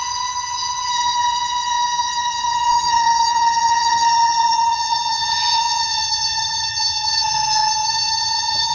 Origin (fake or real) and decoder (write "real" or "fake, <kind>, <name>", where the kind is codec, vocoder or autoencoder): fake, vocoder, HiFi-GAN